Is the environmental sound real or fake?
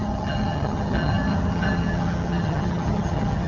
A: fake